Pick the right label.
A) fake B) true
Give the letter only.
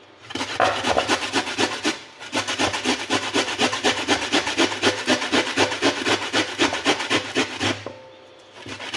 B